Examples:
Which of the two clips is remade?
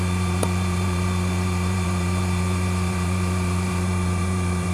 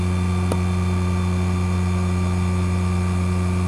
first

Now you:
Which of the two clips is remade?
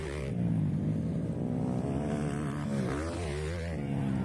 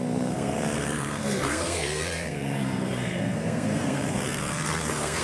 second